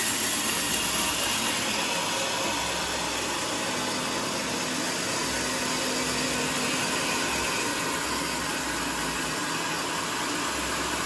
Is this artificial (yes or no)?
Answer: no